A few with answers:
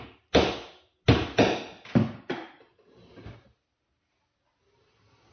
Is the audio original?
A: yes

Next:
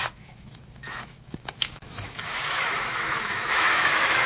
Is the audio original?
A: no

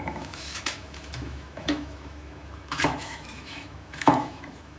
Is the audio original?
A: no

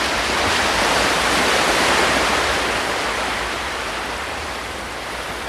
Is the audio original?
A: yes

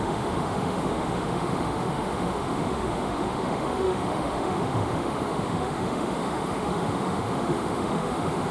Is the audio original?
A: no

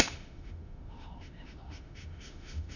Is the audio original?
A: no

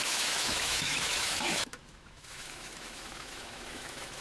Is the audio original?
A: no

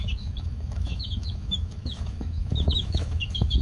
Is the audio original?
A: no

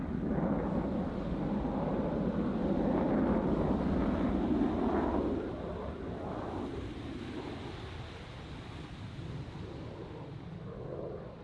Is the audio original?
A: yes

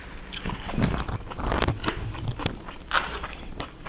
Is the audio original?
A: yes